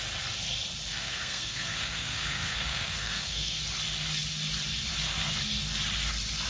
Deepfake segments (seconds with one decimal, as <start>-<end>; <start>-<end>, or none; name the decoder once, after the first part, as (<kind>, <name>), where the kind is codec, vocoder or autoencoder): 0.9-3.6 (codec, SNAC)